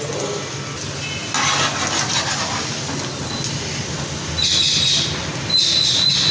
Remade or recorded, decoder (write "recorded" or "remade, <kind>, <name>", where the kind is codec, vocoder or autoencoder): recorded